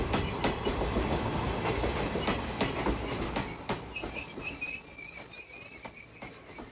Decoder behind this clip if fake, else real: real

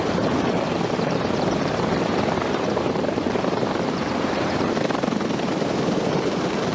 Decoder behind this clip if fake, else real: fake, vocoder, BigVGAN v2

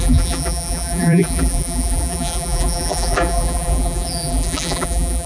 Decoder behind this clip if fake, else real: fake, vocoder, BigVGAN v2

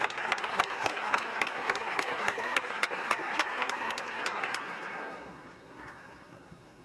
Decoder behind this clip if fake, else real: fake, codec, SNAC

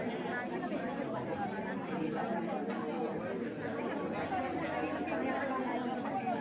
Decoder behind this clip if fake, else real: real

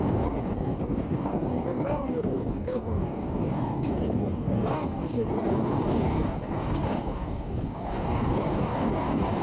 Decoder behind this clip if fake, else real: fake, codec, DAC